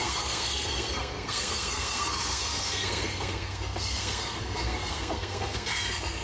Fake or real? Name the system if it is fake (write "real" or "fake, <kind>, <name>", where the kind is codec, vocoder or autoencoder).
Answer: fake, codec, SNAC